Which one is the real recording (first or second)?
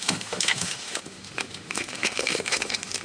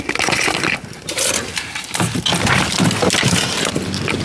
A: second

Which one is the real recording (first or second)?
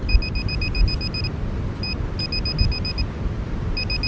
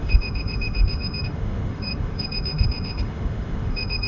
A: first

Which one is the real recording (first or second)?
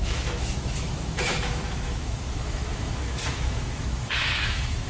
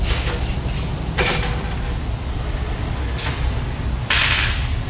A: second